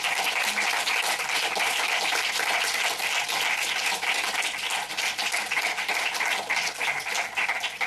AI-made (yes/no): no